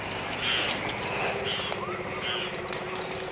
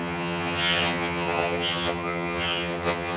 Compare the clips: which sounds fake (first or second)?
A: second